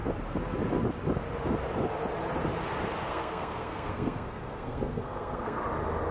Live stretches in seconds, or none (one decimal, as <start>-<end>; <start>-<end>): 0.0-3.1; 5.6-6.1